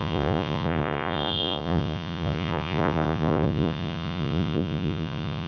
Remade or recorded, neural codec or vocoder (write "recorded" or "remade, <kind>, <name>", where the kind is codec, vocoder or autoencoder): remade, vocoder, Vocos